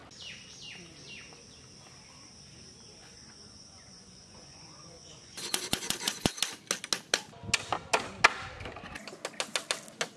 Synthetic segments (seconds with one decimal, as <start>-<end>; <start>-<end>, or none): 3.0-6.3